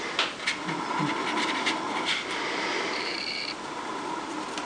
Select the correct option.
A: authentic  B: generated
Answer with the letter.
B